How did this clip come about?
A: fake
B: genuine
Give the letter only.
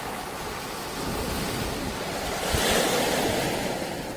B